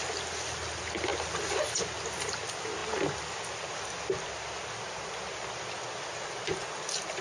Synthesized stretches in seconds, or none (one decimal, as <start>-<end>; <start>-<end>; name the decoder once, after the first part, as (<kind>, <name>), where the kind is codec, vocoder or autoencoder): none